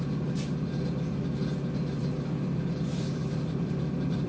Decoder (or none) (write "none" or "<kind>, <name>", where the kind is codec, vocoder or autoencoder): none